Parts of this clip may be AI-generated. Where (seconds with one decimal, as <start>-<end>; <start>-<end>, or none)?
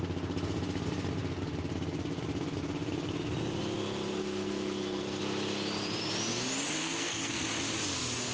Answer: 4.2-5.2; 6.8-7.4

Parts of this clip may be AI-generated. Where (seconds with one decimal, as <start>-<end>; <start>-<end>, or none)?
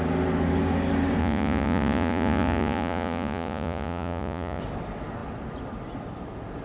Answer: 1.2-4.6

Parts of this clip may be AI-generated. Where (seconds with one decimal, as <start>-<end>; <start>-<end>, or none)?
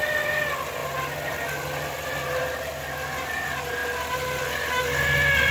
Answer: 0.8-2.4; 3.8-4.4